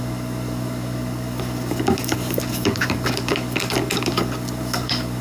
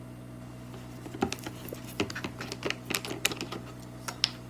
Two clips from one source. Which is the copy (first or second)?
first